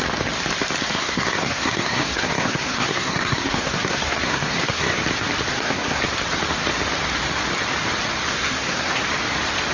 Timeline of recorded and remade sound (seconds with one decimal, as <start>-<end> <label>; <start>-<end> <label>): 0.0-0.9 recorded; 0.9-5.0 remade; 5.0-5.5 recorded; 5.5-6.0 remade; 6.0-8.3 recorded; 8.3-9.0 remade; 9.0-9.7 recorded